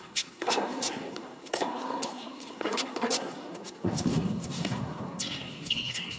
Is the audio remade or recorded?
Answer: remade